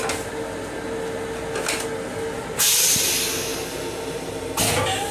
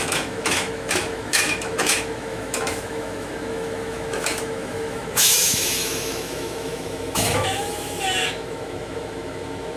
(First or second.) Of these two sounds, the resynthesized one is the second